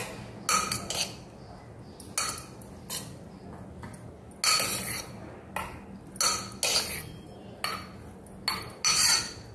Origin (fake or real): real